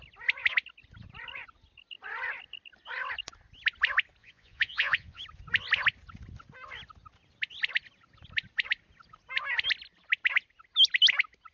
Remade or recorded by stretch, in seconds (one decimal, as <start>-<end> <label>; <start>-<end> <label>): 0.0-4.2 recorded; 4.2-5.2 remade; 5.2-11.5 recorded